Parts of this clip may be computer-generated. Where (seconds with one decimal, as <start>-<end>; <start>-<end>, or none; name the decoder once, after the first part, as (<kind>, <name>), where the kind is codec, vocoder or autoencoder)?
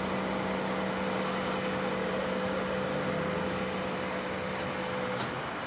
2.0-2.6 (codec, DAC)